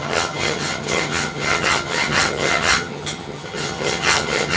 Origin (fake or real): fake